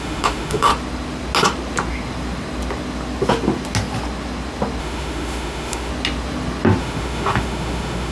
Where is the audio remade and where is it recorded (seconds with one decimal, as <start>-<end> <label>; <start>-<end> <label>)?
0.0-0.7 remade; 0.7-4.8 recorded; 4.8-5.9 remade; 5.9-6.8 recorded; 6.8-8.1 remade